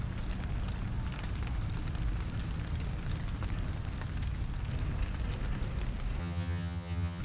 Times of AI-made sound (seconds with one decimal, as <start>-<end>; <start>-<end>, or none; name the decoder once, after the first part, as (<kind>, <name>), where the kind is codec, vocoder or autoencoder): 6.2-7.2 (vocoder, HiFi-GAN)